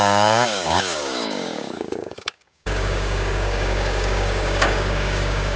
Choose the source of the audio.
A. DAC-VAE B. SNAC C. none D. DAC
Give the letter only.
D